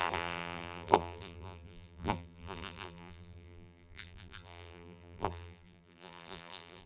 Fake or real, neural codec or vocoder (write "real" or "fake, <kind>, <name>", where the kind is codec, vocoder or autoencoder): fake, vocoder, BigVGAN v2